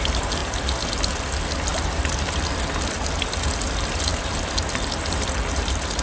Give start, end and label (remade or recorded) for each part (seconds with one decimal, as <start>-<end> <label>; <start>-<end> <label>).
0.0-6.0 recorded